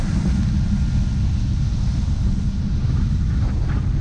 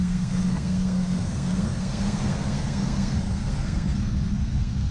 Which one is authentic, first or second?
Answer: first